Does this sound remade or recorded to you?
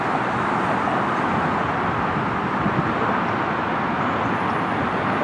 recorded